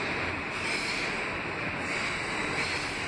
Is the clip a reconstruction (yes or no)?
no